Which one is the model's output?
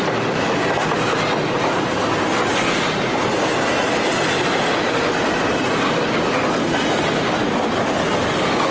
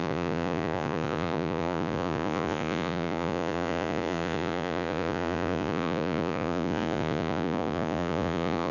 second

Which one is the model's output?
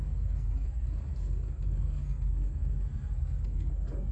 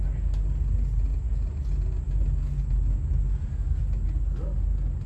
first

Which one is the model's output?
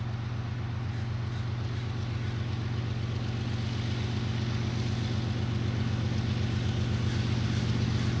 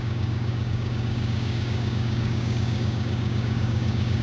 second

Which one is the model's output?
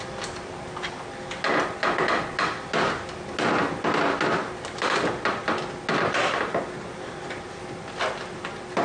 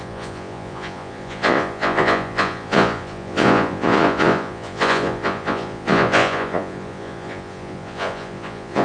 second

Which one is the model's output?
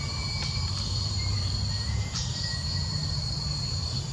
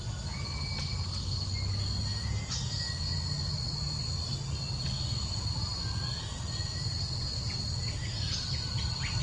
first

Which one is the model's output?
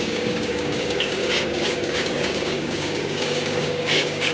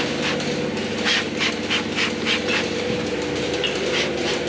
first